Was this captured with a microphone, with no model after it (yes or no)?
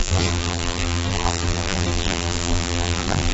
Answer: no